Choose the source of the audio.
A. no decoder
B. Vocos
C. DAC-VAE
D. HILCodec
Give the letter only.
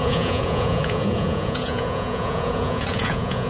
B